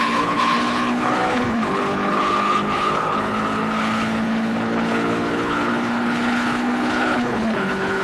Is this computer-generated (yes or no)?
yes